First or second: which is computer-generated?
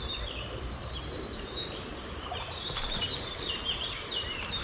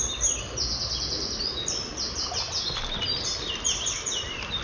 first